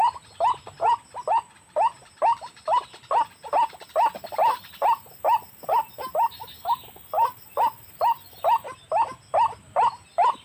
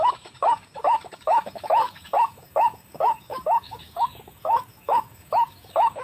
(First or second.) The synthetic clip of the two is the second